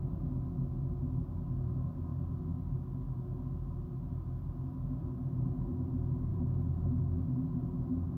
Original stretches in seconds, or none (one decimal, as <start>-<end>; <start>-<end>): 0.0-6.3; 7.0-8.2